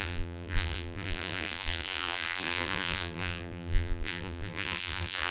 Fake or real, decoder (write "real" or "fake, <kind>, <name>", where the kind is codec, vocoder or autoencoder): fake, vocoder, BigVGAN v2